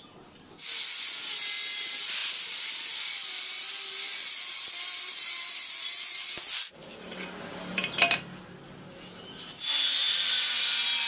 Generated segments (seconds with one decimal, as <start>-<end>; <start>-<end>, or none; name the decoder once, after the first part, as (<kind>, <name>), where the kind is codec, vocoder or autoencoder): none